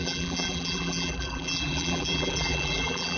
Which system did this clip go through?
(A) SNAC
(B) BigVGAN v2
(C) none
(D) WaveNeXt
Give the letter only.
B